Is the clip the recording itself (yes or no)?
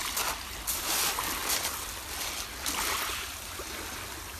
yes